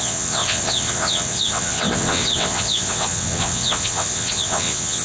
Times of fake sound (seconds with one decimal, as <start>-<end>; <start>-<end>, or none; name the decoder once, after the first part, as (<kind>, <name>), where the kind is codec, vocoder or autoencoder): 0.0-5.0 (vocoder, WaveNeXt)